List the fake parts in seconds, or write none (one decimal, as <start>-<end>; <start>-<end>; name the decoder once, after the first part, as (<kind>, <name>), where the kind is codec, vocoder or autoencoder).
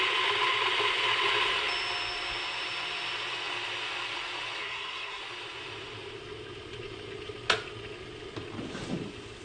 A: 4.6-5.2 (codec, SNAC)